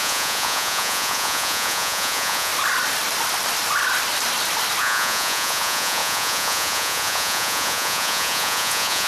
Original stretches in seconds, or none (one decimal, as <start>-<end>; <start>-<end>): 2.5-4.8